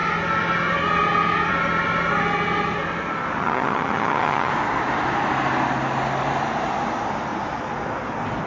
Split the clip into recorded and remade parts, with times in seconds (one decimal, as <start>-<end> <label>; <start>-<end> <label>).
0.0-3.4 recorded; 3.4-4.5 remade; 4.5-8.5 recorded